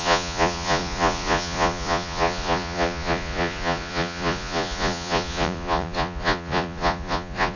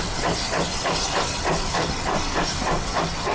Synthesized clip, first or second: first